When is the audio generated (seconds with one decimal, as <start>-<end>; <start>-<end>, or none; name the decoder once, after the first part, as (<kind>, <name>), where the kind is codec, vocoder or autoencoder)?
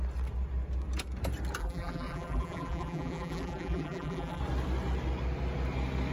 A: 1.6-4.4 (vocoder, BigVGAN v2)